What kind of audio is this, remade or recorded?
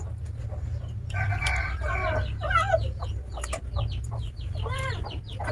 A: recorded